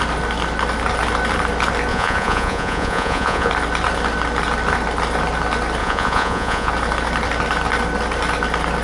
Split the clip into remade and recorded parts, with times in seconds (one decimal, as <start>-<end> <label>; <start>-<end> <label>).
0.0-1.9 recorded; 1.9-3.5 remade; 3.5-5.8 recorded; 5.8-6.7 remade; 6.7-8.8 recorded